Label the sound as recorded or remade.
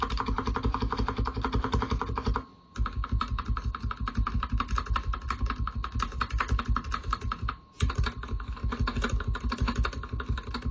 recorded